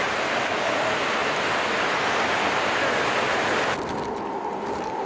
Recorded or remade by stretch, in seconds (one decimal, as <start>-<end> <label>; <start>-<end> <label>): 0.0-1.2 recorded; 1.2-2.7 remade; 2.7-3.5 recorded; 3.5-5.1 remade